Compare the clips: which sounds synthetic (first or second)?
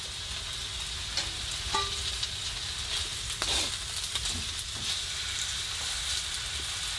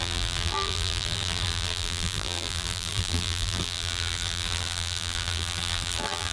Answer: second